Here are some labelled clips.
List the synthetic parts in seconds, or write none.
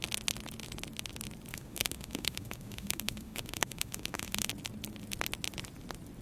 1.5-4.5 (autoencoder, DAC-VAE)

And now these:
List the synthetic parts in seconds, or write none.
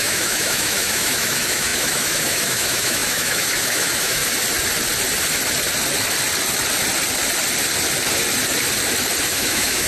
0.0-4.2 (autoencoder, DAC-VAE); 9.2-9.9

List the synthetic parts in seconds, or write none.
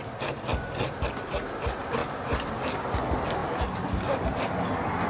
none